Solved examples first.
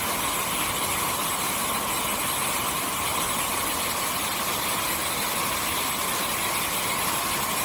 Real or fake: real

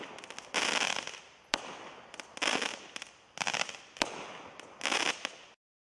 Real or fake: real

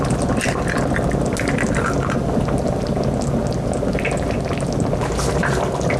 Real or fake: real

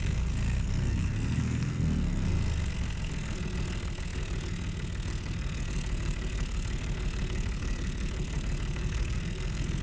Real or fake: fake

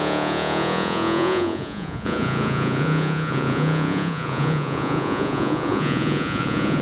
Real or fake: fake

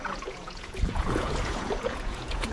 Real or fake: fake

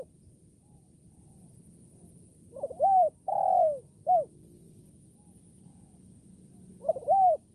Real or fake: real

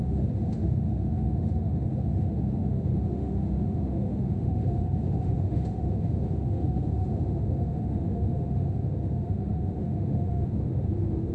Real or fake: fake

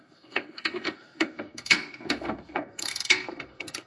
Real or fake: fake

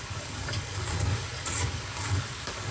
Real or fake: fake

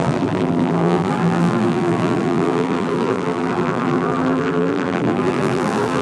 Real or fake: fake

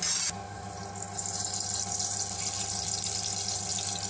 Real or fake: real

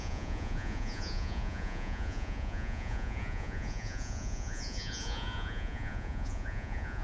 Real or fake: fake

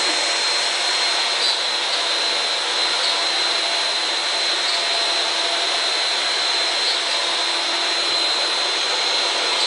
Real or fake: real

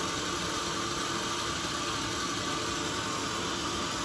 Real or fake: real